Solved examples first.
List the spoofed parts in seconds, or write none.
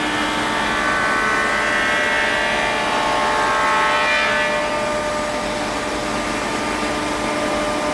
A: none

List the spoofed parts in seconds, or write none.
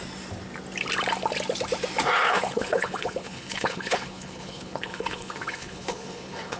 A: 2.2-6.6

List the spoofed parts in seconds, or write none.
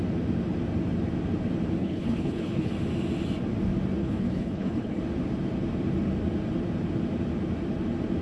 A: 1.8-2.7; 4.0-5.0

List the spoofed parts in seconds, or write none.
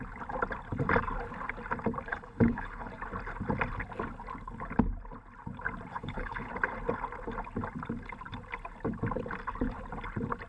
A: 2.1-2.9; 5.9-6.5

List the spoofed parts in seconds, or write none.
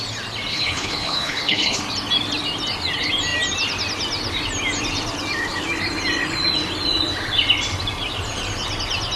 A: 0.5-1.8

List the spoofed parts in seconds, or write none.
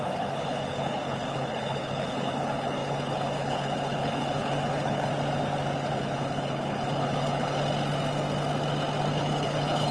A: 0.0-5.1; 6.0-7.6; 9.1-9.9